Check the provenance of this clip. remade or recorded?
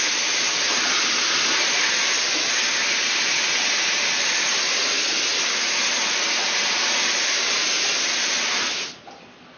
recorded